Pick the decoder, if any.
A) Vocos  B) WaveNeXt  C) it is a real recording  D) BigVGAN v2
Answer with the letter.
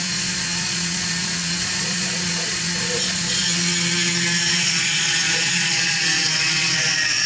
A